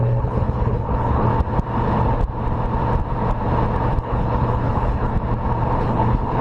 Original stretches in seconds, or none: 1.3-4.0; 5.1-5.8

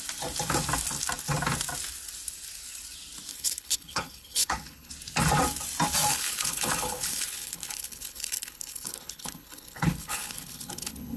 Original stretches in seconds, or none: 0.0-3.3; 4.9-6.1